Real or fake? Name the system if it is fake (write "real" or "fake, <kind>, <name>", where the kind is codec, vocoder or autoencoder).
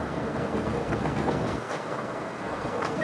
fake, codec, SNAC